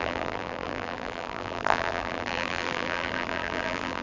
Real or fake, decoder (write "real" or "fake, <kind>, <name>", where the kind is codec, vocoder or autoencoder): fake, vocoder, BigVGAN v2